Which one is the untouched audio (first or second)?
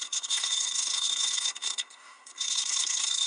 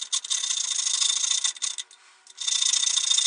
second